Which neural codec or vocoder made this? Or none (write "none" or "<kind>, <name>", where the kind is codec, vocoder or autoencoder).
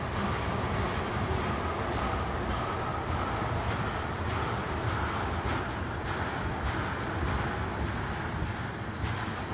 none